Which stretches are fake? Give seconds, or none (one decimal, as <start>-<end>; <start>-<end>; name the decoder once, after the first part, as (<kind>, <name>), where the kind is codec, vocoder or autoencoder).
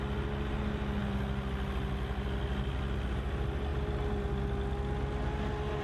none